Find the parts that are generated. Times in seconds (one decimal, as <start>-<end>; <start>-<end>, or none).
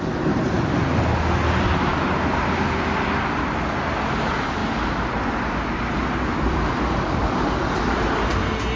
none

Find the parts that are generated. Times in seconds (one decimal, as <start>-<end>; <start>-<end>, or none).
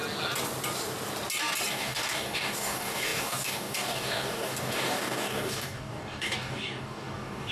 1.7-7.5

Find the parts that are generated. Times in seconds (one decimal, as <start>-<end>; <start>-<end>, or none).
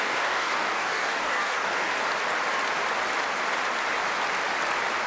0.0-1.9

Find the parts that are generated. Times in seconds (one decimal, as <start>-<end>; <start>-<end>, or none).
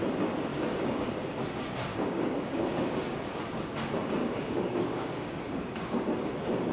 0.5-1.1; 1.9-3.7; 4.2-6.0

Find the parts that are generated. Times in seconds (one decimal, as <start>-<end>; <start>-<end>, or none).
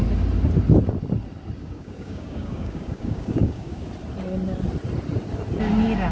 1.6-3.9